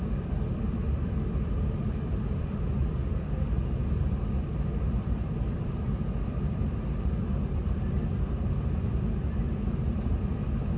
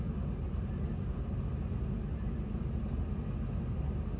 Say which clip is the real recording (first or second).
second